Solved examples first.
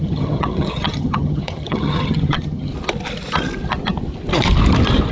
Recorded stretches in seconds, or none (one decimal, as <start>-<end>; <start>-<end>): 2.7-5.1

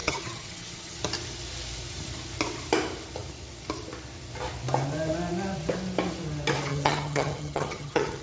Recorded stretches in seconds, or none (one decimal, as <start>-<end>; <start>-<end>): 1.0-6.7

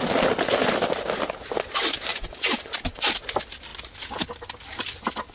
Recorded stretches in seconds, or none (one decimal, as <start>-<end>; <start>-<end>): 0.0-5.3

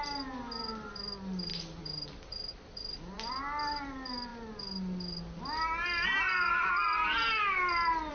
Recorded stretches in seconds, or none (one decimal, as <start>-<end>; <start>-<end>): 0.0-8.1

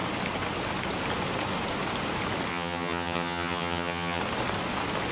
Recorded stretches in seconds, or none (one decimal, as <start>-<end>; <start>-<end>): 0.0-2.5; 4.2-5.1

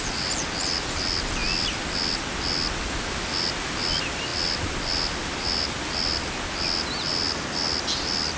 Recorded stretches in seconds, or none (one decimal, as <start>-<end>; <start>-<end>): 0.0-8.4

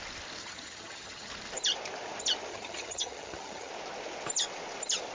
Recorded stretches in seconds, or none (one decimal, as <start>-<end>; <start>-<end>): 0.0-0.4; 1.3-2.5; 3.7-5.1